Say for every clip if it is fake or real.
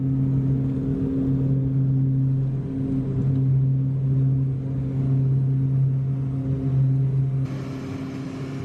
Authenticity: real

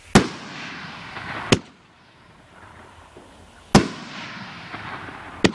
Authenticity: real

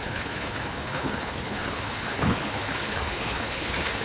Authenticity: fake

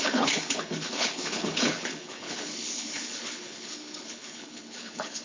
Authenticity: fake